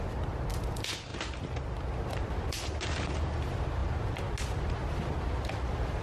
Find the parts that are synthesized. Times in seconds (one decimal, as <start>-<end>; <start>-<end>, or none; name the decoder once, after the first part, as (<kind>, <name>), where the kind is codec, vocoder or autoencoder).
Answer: none